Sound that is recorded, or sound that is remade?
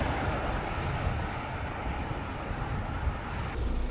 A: recorded